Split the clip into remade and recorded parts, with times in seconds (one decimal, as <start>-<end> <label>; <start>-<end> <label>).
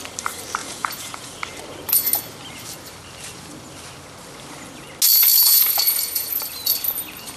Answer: 0.0-0.6 recorded; 0.6-1.3 remade; 1.3-5.3 recorded; 5.3-6.4 remade; 6.4-7.4 recorded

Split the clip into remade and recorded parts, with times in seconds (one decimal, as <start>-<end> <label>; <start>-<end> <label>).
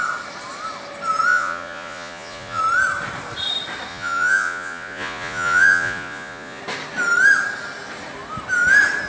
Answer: 0.0-1.3 recorded; 1.3-2.6 remade; 2.6-3.9 recorded; 3.9-6.6 remade; 6.6-9.1 recorded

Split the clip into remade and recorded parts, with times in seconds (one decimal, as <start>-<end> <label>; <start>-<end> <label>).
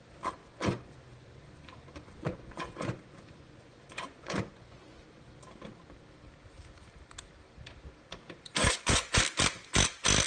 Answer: 0.0-0.4 recorded; 0.4-5.2 remade; 5.2-8.6 recorded; 8.6-9.2 remade; 9.2-10.3 recorded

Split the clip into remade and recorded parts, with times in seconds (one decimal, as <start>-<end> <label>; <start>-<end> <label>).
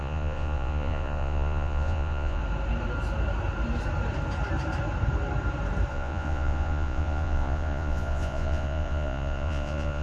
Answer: 0.0-2.4 remade; 2.4-5.9 recorded; 5.9-10.0 remade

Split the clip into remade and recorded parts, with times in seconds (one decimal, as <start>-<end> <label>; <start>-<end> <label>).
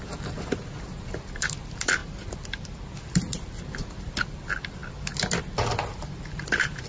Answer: 0.0-6.9 recorded